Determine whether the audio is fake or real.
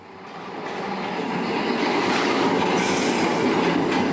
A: real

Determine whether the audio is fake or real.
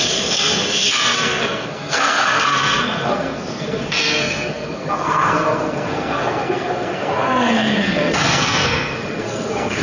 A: fake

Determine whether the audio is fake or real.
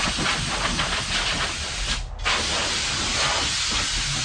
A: real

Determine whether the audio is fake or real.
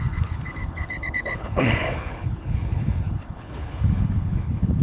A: fake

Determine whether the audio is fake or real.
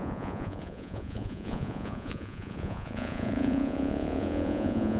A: fake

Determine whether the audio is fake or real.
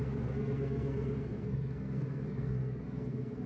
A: fake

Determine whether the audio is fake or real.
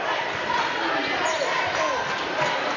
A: real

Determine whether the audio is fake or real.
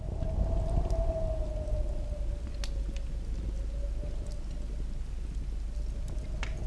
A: real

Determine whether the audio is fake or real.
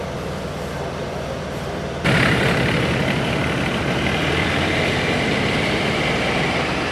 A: fake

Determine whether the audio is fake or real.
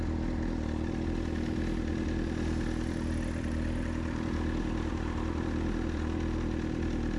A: real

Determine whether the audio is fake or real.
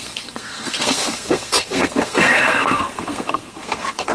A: fake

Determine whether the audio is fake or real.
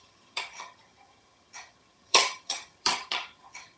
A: fake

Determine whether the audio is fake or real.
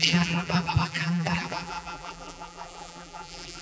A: fake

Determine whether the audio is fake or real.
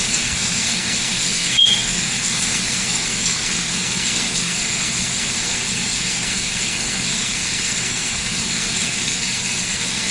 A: fake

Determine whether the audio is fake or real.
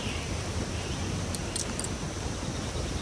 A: real